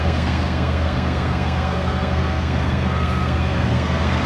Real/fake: fake